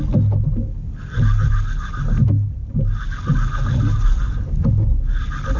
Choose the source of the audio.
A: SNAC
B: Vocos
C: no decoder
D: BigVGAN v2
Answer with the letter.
C